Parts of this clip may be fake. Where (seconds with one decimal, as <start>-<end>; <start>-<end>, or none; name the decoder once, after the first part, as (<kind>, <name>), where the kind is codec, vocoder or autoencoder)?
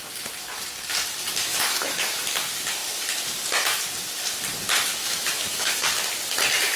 1.5-2.2 (autoencoder, DAC-VAE); 4.9-5.9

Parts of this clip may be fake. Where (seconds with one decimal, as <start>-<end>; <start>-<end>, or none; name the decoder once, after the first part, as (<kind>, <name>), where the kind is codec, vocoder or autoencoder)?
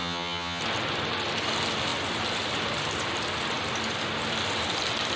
0.0-0.6 (vocoder, HiFi-GAN)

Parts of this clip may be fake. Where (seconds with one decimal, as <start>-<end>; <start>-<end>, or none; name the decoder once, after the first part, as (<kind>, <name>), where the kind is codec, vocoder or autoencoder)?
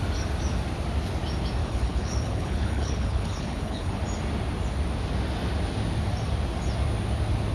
1.6-4.0 (codec, HILCodec)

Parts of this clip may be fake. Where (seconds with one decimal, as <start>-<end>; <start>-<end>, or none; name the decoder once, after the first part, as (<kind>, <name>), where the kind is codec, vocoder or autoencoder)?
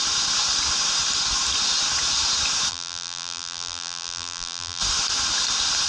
2.7-4.8 (vocoder, BigVGAN v2)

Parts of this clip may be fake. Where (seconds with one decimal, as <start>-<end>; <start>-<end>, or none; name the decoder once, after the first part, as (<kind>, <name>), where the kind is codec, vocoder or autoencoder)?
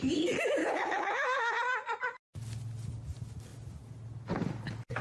0.6-1.6 (codec, HILCodec)